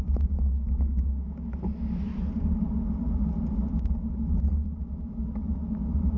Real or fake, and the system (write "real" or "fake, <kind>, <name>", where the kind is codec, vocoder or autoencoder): real